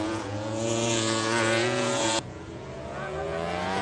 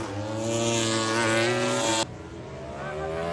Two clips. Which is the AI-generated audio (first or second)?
first